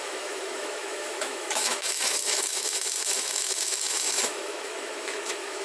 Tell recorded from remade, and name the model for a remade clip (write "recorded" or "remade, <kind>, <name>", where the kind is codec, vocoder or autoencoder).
remade, autoencoder, DAC-VAE